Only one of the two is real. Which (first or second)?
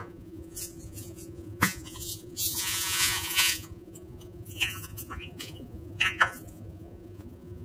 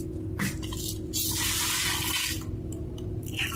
second